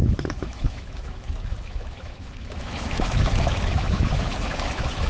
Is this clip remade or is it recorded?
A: remade